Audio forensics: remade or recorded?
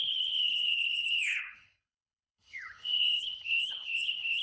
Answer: remade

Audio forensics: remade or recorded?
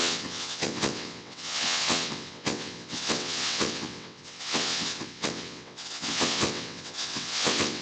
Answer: remade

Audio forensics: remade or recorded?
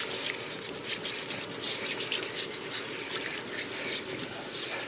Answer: recorded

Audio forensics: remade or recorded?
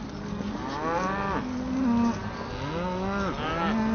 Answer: recorded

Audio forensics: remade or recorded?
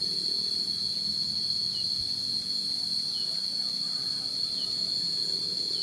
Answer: recorded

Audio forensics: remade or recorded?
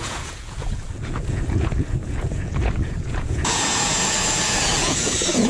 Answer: remade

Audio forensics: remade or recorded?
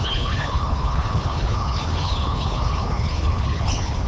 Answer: remade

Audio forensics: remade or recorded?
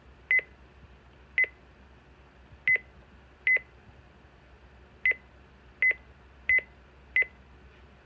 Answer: recorded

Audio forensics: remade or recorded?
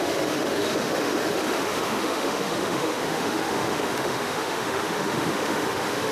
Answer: remade